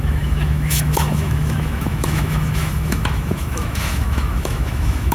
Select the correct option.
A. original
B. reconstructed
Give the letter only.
B